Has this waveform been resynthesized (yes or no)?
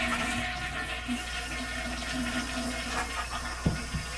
no